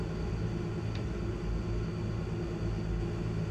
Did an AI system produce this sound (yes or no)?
no